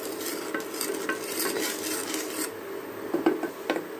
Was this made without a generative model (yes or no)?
yes